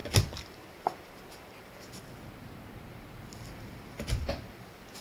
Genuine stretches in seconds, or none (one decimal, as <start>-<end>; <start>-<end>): 0.0-5.0